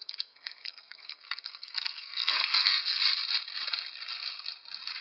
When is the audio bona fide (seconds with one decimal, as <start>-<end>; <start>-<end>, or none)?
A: 3.0-5.0